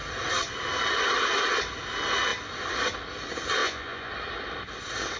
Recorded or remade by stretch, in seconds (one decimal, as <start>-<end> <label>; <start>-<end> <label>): 0.0-3.6 recorded; 3.6-4.1 remade; 4.1-5.2 recorded